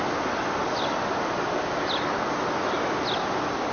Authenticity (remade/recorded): recorded